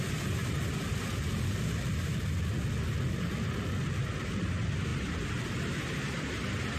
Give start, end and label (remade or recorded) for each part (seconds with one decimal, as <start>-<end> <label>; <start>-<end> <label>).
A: 0.0-6.8 recorded